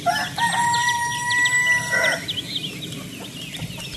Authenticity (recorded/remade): recorded